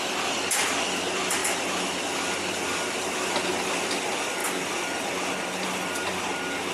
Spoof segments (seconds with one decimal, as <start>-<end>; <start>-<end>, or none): none